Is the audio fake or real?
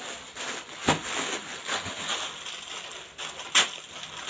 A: real